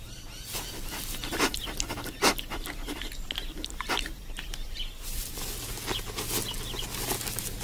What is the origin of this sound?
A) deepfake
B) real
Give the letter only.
B